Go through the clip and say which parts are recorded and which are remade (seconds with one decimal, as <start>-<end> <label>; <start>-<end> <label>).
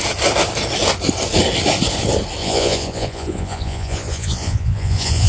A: 0.0-2.4 recorded; 2.4-5.3 remade